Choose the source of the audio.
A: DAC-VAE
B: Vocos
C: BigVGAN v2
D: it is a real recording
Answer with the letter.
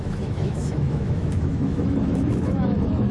A